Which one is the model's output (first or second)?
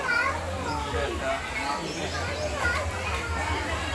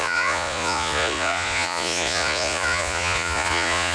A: second